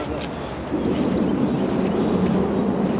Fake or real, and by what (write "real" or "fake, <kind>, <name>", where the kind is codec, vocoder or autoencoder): real